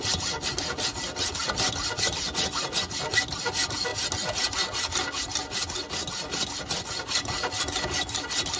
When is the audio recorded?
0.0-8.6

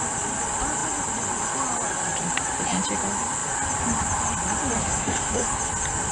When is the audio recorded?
0.0-4.8; 5.6-6.1

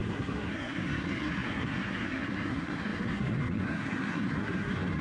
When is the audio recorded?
none